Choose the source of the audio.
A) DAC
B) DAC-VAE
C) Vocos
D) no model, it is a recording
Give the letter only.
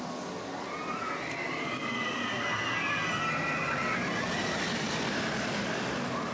D